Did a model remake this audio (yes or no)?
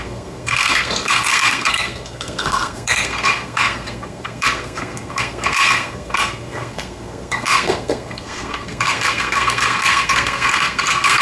yes